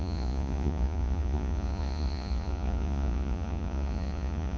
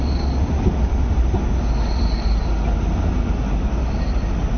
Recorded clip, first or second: second